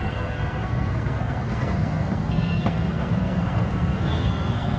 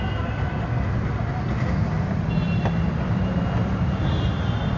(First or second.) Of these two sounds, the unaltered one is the second